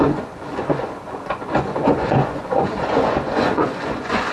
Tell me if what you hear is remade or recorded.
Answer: remade